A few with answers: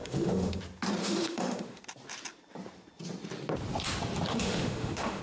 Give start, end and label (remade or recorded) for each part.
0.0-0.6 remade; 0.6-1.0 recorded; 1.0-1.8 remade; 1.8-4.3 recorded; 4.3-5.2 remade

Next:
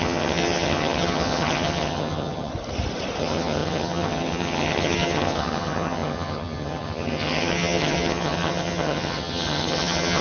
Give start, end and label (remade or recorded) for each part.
0.0-2.5 remade; 2.5-3.2 recorded; 3.2-10.2 remade

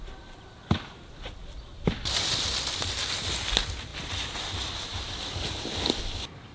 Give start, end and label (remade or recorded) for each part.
0.0-6.5 recorded

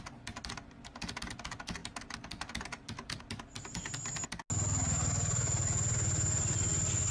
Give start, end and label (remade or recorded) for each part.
0.0-7.1 recorded

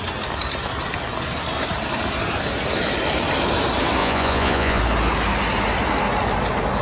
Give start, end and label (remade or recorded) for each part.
0.0-4.0 recorded; 4.0-4.8 remade; 4.8-6.8 recorded

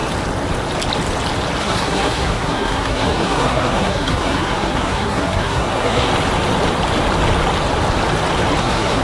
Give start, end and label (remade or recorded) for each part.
0.0-1.6 recorded; 1.6-6.1 remade; 6.1-8.6 recorded; 8.6-9.0 remade

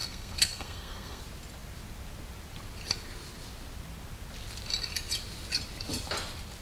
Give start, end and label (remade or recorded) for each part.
0.0-1.2 remade; 1.2-6.6 recorded